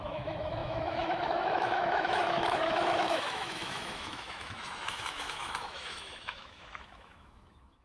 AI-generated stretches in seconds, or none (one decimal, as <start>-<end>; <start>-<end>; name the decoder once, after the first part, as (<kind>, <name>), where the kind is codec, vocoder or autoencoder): 0.0-7.8 (autoencoder, DAC-VAE)